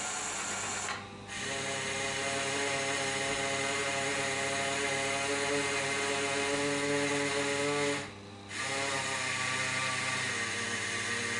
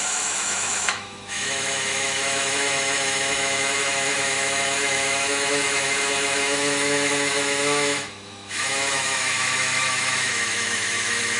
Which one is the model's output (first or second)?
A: second